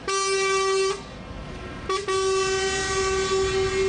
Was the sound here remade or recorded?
recorded